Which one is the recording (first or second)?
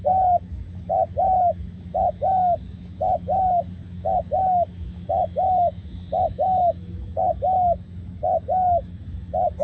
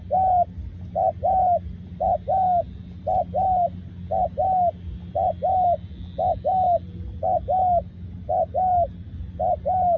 second